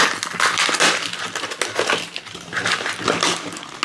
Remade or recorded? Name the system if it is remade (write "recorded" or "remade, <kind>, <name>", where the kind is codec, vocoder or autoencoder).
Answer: recorded